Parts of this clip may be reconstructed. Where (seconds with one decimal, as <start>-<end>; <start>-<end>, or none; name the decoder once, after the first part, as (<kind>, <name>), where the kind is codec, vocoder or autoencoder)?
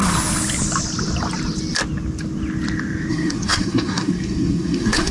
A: 3.1-5.1 (codec, SNAC)